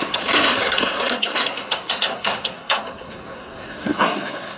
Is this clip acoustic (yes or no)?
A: no